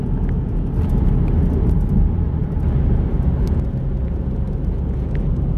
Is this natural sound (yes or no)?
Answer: yes